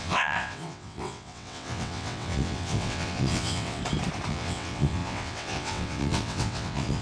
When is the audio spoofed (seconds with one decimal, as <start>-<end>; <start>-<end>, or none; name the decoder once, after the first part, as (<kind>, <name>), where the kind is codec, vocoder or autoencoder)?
0.0-3.8 (vocoder, WaveNeXt); 4.3-7.0